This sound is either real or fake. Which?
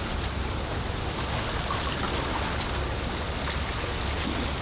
real